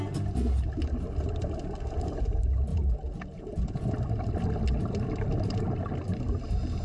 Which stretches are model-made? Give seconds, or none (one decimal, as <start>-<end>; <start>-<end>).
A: 2.7-3.8